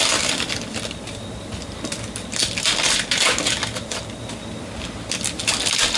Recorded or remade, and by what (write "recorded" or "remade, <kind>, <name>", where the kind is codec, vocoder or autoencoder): recorded